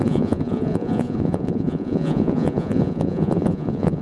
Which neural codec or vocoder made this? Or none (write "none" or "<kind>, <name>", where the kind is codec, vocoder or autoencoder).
vocoder, Vocos